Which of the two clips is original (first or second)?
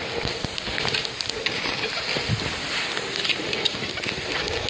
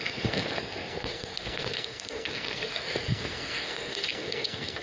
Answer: first